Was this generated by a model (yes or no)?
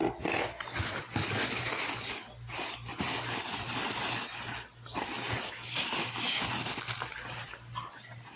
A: no